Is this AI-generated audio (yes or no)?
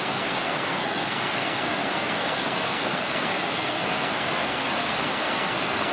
yes